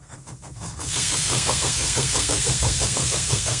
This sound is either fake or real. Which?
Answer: fake